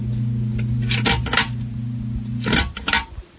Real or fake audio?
real